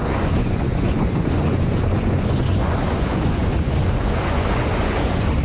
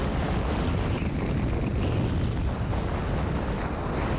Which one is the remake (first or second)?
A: first